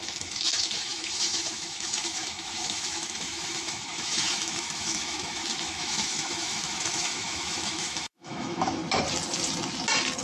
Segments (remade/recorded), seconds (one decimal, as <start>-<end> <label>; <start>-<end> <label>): 0.0-8.8 remade; 8.8-10.2 recorded